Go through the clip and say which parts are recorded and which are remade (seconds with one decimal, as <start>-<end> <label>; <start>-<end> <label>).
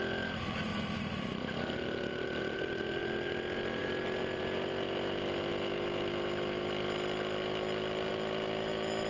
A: 0.0-9.1 recorded